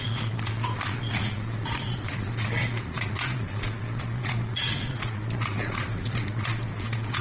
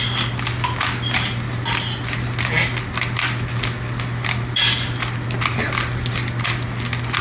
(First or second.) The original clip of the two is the second